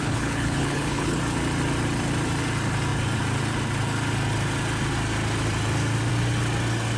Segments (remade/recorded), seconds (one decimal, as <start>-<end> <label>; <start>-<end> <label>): 0.0-1.2 remade; 1.2-7.0 recorded